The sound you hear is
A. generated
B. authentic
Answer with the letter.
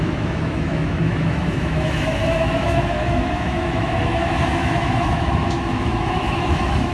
A